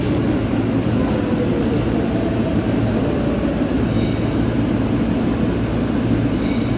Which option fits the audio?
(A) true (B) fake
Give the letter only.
A